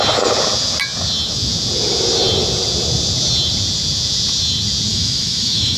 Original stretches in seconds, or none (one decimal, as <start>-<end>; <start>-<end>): 0.0-4.9